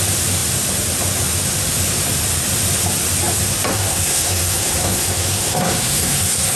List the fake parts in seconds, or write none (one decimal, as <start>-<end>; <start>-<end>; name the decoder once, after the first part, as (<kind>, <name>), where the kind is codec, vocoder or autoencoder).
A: 3.7-6.6 (codec, SNAC)

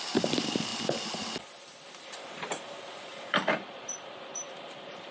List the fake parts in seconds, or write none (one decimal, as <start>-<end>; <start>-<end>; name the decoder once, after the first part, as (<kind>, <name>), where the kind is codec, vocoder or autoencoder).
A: 2.5-5.1 (vocoder, BigVGAN v2)

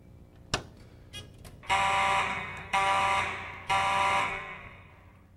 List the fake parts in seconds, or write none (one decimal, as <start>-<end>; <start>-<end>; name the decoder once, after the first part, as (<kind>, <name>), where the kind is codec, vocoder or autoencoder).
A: 2.3-3.0 (codec, SNAC); 4.2-4.9

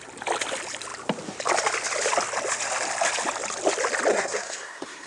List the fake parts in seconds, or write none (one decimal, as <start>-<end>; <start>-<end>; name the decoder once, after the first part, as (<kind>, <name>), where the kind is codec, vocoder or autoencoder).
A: 4.1-5.1 (codec, SNAC)

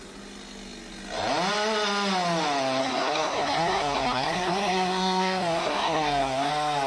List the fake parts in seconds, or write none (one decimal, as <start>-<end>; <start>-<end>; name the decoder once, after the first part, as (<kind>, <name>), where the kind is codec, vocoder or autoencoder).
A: 2.8-6.5 (codec, SNAC)

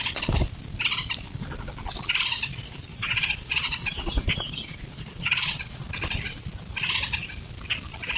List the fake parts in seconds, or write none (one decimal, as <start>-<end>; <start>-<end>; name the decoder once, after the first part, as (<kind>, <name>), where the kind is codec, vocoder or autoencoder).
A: 2.9-5.8 (vocoder, Vocos)

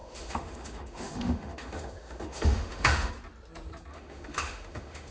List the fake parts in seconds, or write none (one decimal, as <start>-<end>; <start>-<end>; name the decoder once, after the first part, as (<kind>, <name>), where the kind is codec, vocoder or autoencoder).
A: 0.0-3.1 (autoencoder, DAC-VAE); 3.9-5.1